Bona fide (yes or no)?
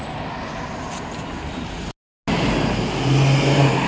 yes